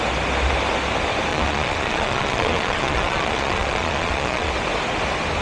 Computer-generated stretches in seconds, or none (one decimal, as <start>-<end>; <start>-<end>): 1.3-4.5